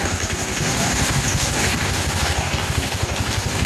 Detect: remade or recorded remade